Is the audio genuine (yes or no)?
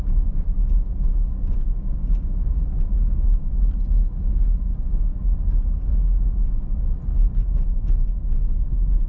yes